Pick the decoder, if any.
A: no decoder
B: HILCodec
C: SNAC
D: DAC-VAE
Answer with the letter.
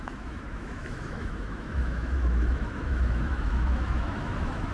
D